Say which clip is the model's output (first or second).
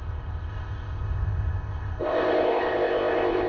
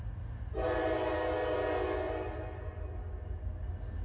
first